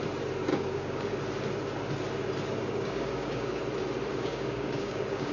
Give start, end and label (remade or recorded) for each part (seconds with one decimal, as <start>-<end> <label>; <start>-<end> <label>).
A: 0.0-0.5 recorded; 0.5-1.1 remade; 1.1-2.6 recorded; 2.6-3.6 remade; 3.6-4.1 recorded; 4.1-5.3 remade